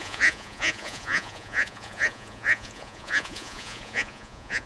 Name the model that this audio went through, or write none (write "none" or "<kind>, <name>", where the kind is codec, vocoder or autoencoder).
vocoder, Vocos